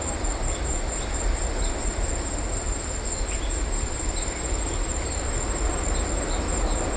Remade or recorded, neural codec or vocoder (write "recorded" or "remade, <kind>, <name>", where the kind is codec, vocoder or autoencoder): recorded